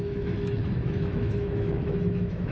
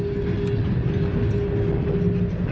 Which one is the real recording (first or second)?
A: second